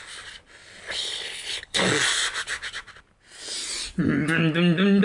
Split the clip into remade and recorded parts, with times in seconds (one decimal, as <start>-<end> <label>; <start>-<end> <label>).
0.0-1.0 recorded; 1.0-1.8 remade; 1.8-5.0 recorded